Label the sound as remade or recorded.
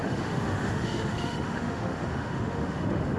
remade